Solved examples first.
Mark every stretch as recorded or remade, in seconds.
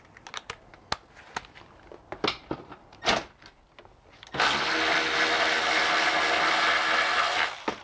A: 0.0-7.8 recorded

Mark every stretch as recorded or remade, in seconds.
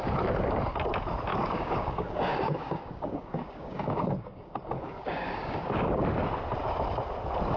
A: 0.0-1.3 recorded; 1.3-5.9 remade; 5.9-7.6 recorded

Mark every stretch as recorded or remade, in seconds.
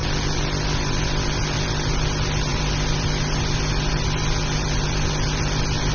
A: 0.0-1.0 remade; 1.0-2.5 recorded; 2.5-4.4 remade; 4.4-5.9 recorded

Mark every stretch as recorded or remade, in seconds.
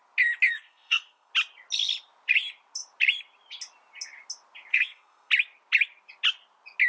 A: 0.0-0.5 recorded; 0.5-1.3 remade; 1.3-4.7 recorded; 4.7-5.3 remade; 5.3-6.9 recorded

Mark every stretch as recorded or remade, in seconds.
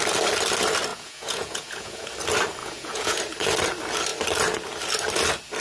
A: 0.0-0.9 recorded; 0.9-2.1 remade; 2.1-2.6 recorded; 2.6-3.2 remade; 3.2-5.6 recorded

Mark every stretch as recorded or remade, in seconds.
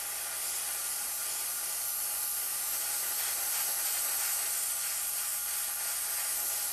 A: 0.0-0.8 recorded; 0.8-3.5 remade; 3.5-6.7 recorded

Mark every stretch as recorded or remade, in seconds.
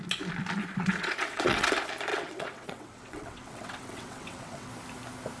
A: 0.0-0.6 recorded; 0.6-1.7 remade; 1.7-2.1 recorded; 2.1-4.7 remade; 4.7-5.4 recorded